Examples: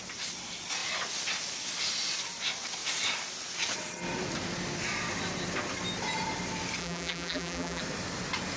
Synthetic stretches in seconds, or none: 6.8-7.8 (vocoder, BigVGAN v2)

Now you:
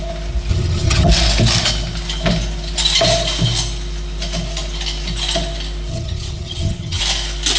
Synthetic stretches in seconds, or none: 0.5-1.1 (vocoder, HiFi-GAN); 5.9-7.0

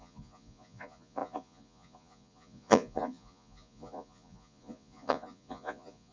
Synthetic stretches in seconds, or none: 0.0-6.1 (vocoder, Vocos)

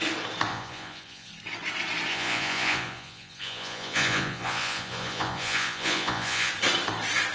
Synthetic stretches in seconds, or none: 0.5-1.3 (vocoder, Vocos); 2.1-6.5

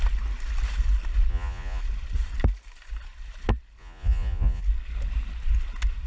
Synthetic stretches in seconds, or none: 1.3-1.8 (vocoder, Vocos); 3.8-4.6

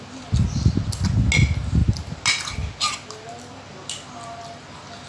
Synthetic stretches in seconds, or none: none